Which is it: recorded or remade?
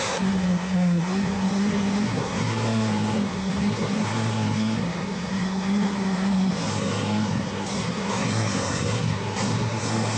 remade